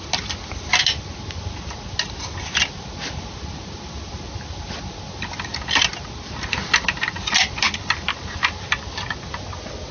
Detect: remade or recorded recorded